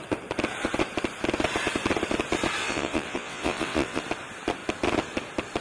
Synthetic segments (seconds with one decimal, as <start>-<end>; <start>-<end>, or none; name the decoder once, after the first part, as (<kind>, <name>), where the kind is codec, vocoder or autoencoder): 2.6-4.0 (vocoder, WaveNeXt)